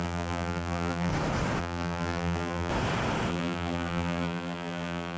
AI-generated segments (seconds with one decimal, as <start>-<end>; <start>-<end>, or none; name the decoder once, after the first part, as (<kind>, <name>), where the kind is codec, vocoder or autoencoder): 0.0-1.1 (vocoder, BigVGAN v2); 1.6-2.7; 3.3-5.2